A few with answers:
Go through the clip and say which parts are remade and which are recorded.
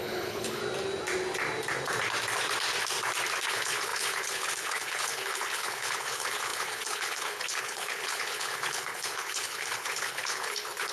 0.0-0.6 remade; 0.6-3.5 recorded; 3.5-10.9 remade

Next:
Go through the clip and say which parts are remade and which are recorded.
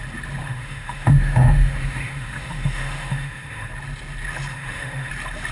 0.0-0.4 recorded; 0.4-3.7 remade; 3.7-4.5 recorded; 4.5-5.1 remade; 5.1-5.5 recorded